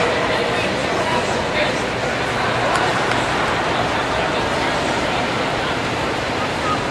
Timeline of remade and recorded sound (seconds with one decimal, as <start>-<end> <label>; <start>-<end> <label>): 0.0-0.8 recorded; 0.8-1.5 remade; 1.5-6.9 recorded